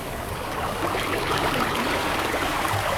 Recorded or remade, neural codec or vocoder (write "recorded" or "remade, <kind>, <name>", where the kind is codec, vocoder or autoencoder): remade, codec, DAC